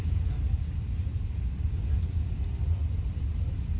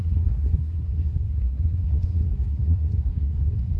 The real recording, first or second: first